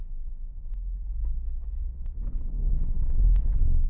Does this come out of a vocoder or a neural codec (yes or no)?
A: yes